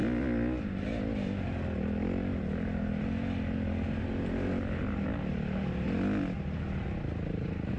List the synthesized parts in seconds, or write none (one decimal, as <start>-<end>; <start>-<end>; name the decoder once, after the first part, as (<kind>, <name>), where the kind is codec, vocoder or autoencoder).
none